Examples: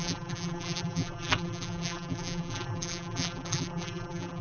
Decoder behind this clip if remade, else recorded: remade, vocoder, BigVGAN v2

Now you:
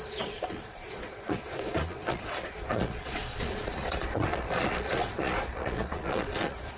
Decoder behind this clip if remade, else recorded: remade, vocoder, Vocos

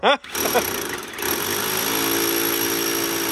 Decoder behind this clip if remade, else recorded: recorded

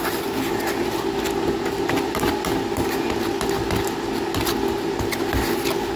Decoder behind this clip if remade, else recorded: recorded